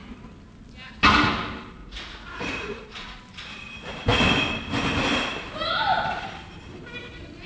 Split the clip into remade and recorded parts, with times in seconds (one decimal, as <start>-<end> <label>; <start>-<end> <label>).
0.0-1.8 recorded; 1.8-3.2 remade; 3.2-7.5 recorded